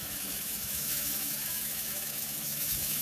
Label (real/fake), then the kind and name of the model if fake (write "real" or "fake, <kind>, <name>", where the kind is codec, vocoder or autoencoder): fake, autoencoder, DAC-VAE